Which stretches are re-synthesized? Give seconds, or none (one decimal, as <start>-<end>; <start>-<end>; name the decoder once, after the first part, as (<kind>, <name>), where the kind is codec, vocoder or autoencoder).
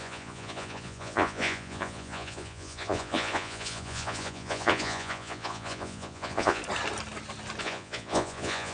0.0-6.6 (vocoder, Vocos); 7.6-8.7